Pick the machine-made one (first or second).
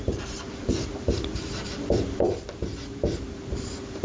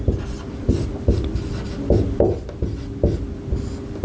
first